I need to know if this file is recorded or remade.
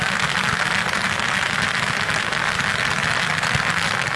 recorded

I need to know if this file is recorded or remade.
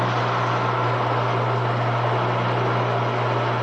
recorded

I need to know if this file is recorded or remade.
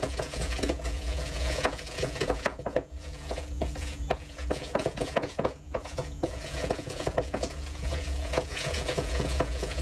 remade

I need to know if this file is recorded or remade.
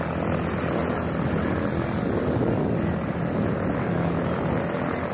recorded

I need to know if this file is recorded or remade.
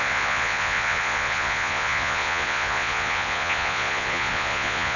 remade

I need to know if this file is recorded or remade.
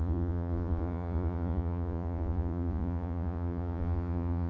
remade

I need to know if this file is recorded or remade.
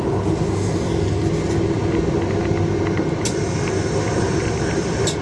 recorded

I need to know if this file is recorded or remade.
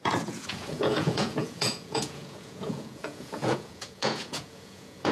remade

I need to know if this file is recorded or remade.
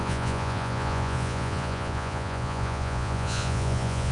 remade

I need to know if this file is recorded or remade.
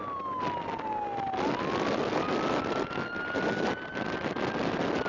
recorded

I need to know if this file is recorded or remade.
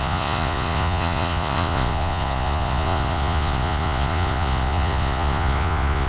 remade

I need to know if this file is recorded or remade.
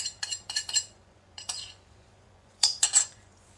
remade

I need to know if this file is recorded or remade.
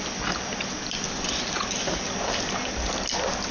recorded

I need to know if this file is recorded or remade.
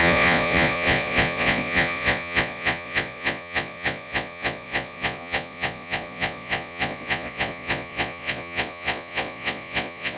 remade